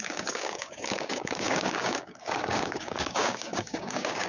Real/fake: fake